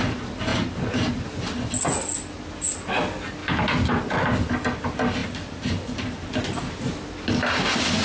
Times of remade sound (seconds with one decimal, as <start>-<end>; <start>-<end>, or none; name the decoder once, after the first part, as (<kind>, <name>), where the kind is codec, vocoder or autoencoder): 5.2-6.3 (vocoder, BigVGAN v2)